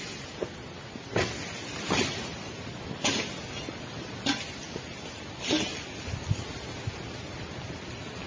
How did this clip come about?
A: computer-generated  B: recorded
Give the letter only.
B